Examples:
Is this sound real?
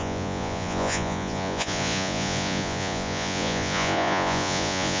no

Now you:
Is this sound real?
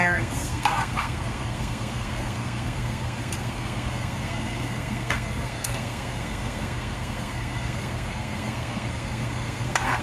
no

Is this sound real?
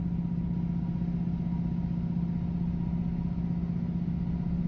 yes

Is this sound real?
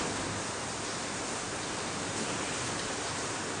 yes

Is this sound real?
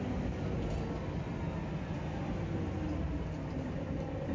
yes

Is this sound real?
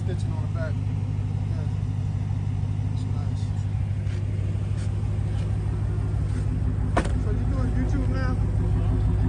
yes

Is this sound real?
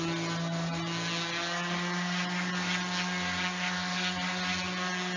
yes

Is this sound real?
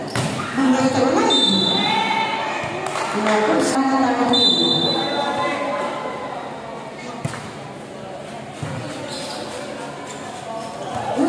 yes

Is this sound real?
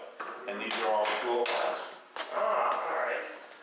yes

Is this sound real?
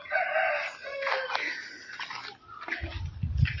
yes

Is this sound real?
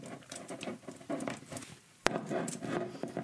yes